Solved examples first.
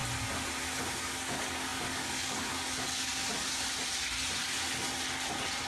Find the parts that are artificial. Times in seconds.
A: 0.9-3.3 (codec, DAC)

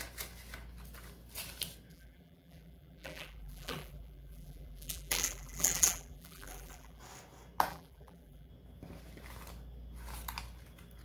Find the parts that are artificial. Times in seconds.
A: 1.9-7.0 (vocoder, BigVGAN v2); 7.7-8.5

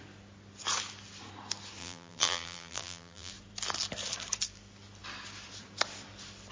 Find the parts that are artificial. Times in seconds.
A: 1.8-3.3 (vocoder, BigVGAN v2)

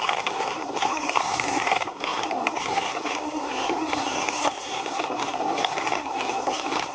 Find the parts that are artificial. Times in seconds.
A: 0.0-6.9 (codec, SNAC)